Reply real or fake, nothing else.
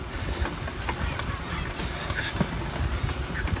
real